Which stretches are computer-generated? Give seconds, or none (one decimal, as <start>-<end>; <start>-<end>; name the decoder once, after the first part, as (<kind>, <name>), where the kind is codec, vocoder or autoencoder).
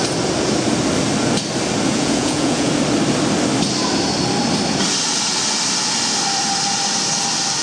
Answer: 1.9-2.7 (vocoder, Vocos)